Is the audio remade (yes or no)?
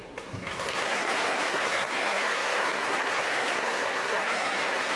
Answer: yes